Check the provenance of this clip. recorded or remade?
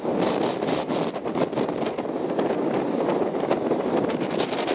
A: recorded